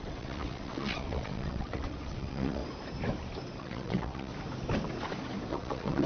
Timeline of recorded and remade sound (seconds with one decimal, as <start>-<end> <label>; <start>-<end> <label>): 0.0-2.6 remade; 2.6-3.6 recorded; 3.6-4.3 remade; 4.3-5.5 recorded; 5.5-6.1 remade